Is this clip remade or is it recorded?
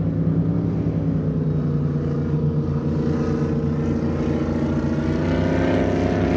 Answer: recorded